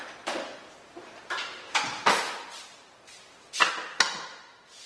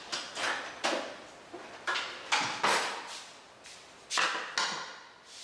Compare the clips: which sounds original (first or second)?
second